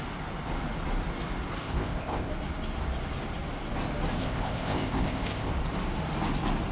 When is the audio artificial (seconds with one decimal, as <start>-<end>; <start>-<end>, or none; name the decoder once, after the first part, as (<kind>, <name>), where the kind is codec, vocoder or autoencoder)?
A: 1.6-2.3 (codec, ZipCodec); 4.2-5.5